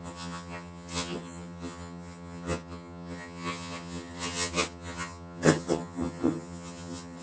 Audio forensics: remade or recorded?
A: remade